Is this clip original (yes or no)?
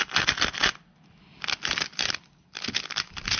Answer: yes